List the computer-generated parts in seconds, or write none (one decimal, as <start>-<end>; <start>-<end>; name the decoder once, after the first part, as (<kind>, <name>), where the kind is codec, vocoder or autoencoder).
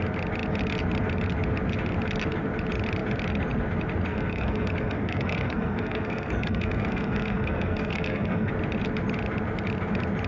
4.1-8.5 (codec, SNAC)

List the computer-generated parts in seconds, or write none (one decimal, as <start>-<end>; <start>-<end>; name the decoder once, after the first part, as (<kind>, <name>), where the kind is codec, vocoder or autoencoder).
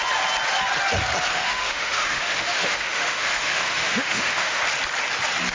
1.3-4.6 (autoencoder, DAC-VAE)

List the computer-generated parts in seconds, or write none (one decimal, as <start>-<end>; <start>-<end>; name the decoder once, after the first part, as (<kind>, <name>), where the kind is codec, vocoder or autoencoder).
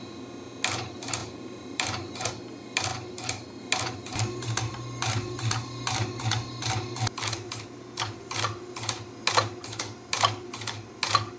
1.2-2.1 (vocoder, BigVGAN v2)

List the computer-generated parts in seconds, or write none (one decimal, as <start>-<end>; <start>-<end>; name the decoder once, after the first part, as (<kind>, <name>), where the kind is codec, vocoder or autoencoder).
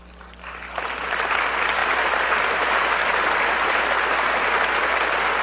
none